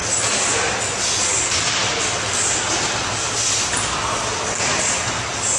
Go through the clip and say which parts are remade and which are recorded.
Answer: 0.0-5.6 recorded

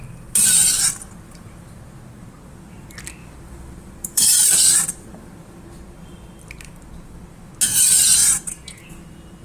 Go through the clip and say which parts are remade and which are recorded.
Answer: 0.0-3.2 recorded; 3.2-5.6 remade; 5.6-8.2 recorded; 8.2-8.9 remade; 8.9-9.4 recorded

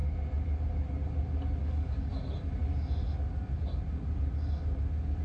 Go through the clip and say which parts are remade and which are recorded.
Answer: 0.0-1.6 recorded; 1.6-2.1 remade; 2.1-5.2 recorded

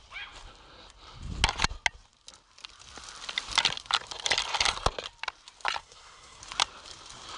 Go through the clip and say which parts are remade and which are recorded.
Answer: 0.0-5.8 recorded; 5.8-6.4 remade; 6.4-7.4 recorded

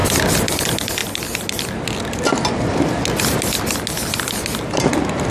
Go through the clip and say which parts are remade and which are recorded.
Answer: 0.0-0.6 remade; 0.6-5.3 recorded

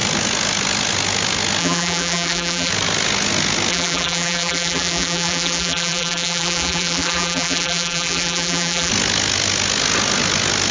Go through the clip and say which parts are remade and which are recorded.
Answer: 0.0-1.6 recorded; 1.6-2.7 remade; 2.7-3.7 recorded; 3.7-8.9 remade; 8.9-10.7 recorded